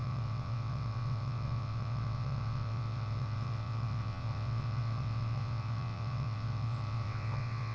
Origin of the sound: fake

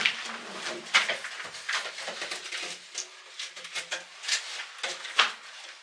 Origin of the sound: real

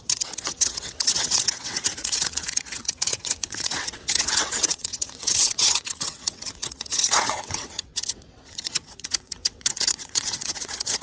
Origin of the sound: fake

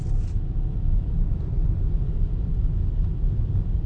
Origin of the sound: real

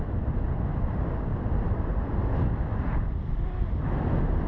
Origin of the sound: real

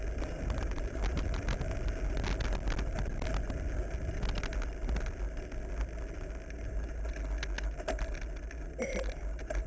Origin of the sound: real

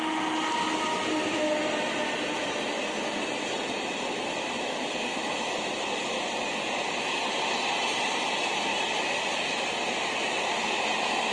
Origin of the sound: real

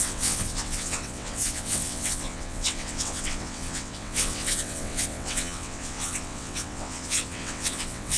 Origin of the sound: fake